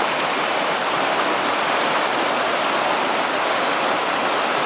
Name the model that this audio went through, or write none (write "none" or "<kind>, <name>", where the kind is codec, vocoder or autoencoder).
none